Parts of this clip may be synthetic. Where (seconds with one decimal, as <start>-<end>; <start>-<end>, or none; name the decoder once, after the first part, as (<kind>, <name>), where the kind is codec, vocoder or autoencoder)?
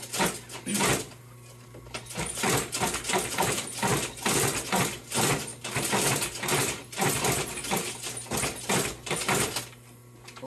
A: none